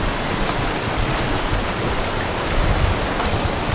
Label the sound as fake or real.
real